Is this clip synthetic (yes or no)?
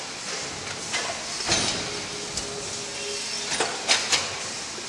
no